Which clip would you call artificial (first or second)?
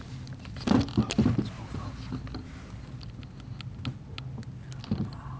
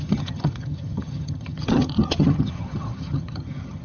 second